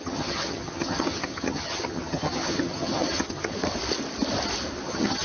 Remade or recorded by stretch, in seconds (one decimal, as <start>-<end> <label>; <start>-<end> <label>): 0.0-3.6 remade; 3.6-4.8 recorded; 4.8-5.2 remade